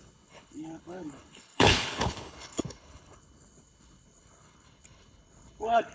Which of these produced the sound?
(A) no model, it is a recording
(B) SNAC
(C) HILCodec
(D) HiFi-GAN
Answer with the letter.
C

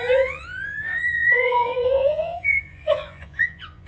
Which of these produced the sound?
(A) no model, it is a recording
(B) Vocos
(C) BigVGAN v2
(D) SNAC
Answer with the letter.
B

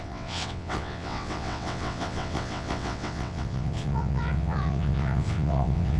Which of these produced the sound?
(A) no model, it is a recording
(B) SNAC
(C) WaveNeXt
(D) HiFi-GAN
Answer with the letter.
C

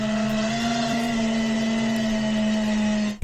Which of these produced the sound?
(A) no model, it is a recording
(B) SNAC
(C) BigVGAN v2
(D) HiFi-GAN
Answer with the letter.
A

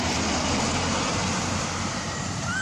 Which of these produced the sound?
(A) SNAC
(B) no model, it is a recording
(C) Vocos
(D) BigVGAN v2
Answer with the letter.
D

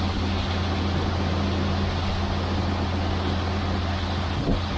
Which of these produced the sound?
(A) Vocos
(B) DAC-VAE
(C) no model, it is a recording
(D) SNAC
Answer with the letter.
C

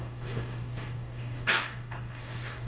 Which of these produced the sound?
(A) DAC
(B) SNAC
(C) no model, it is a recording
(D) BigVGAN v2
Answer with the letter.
A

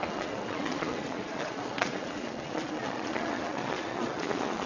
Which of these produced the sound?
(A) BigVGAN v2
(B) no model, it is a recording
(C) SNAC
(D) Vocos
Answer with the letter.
D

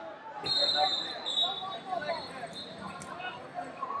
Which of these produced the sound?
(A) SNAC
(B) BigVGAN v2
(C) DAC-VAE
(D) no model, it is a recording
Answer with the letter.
D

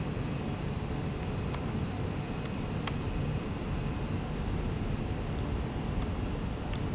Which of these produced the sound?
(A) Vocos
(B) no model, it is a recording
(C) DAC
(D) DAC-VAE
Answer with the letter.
B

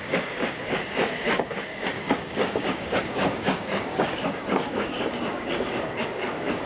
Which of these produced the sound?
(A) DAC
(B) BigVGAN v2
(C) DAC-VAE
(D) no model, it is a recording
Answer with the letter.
A